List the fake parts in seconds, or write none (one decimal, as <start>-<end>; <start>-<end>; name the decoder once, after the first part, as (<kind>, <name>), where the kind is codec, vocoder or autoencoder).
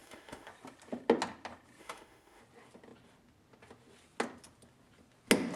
0.0-0.5 (autoencoder, DAC-VAE); 1.8-2.4